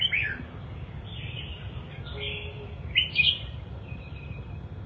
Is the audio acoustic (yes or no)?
yes